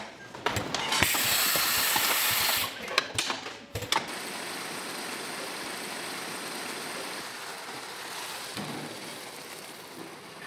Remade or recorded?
recorded